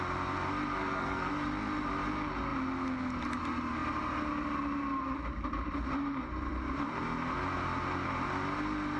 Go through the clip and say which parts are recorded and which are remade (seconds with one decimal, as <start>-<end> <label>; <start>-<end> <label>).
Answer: 0.0-0.8 recorded; 0.8-1.3 remade; 1.3-9.0 recorded